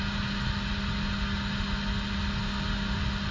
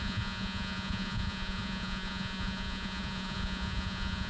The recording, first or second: first